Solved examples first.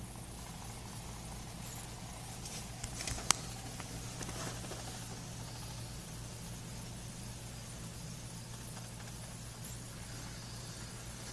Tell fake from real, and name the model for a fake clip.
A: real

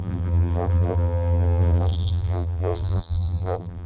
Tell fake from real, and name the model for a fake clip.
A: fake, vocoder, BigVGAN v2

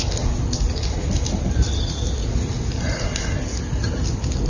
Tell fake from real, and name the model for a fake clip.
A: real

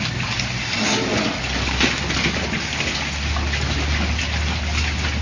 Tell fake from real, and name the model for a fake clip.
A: real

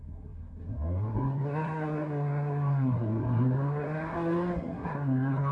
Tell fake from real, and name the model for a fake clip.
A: fake, codec, SNAC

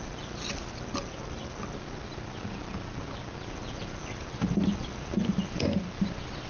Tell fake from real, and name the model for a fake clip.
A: real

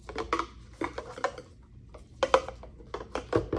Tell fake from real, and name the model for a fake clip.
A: real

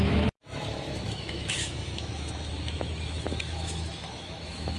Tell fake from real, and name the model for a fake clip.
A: fake, autoencoder, DAC-VAE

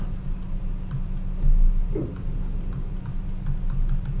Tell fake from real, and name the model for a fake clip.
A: real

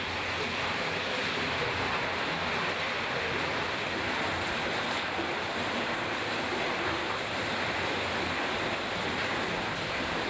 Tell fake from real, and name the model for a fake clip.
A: real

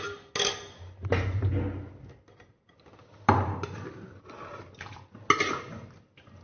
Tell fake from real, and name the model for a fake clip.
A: real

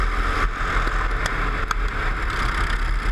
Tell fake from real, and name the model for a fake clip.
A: real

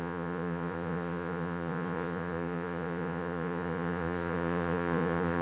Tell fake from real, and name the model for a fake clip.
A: fake, vocoder, Vocos